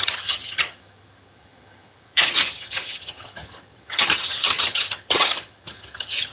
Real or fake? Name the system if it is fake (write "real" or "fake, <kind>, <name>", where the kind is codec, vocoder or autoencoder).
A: fake, vocoder, HiFi-GAN